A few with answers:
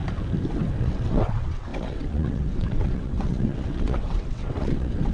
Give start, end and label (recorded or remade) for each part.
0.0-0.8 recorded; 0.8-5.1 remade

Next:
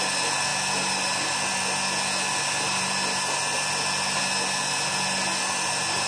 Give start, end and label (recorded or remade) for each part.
0.0-6.1 recorded

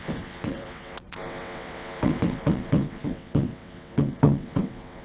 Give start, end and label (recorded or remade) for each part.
0.0-5.0 remade